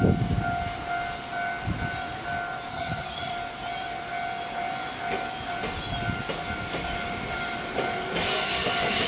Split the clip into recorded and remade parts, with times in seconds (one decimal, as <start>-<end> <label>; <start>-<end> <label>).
0.0-2.7 recorded; 2.7-3.3 remade; 3.3-9.1 recorded